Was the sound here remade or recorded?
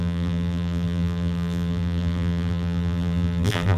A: remade